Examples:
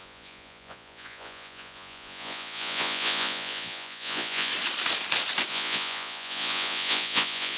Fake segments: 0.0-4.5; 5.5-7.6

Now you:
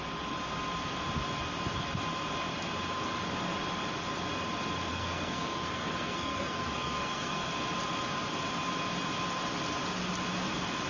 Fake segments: 4.9-7.5

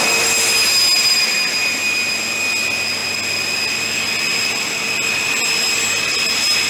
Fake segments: 1.6-2.2

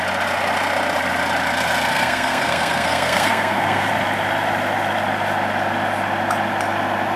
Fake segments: 1.9-3.9

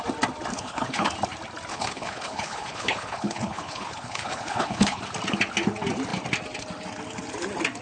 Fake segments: 0.5-1.1; 1.7-5.0

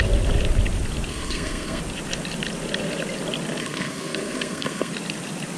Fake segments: 1.1-1.8; 3.6-4.9